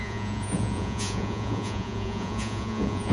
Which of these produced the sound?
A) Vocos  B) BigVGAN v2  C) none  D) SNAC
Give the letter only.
A